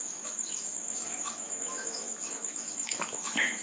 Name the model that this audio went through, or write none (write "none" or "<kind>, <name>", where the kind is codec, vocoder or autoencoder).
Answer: autoencoder, DAC-VAE